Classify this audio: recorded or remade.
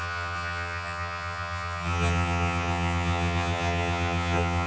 remade